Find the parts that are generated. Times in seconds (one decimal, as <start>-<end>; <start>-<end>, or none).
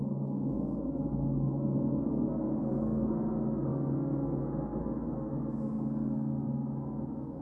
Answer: 0.0-7.4